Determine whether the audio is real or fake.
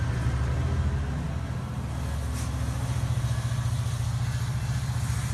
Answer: real